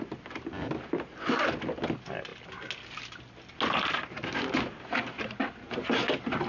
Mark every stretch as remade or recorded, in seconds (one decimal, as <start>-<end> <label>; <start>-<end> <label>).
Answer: 0.0-6.5 recorded